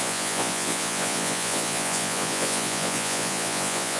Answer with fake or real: fake